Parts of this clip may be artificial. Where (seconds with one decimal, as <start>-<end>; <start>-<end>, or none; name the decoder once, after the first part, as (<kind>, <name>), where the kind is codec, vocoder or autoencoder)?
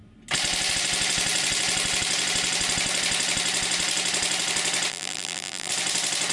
4.9-5.7 (vocoder, BigVGAN v2)